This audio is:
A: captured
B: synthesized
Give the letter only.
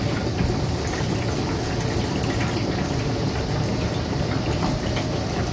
A